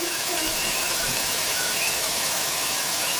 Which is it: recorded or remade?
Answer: remade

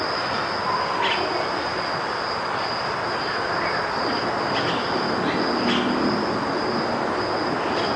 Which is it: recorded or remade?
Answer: recorded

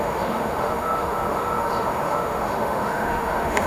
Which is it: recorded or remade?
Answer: remade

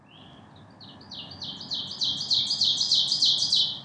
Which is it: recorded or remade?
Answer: recorded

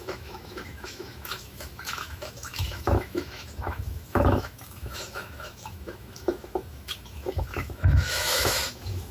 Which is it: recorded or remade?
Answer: remade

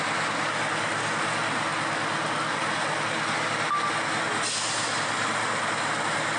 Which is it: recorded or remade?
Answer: recorded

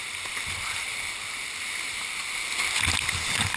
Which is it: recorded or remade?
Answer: recorded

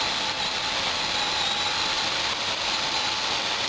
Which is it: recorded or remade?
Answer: recorded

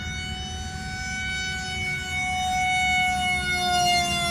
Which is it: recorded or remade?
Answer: recorded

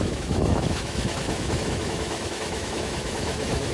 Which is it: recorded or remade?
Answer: remade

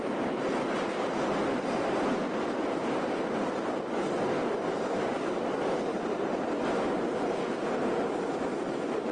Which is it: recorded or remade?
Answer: recorded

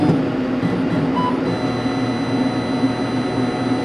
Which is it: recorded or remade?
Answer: recorded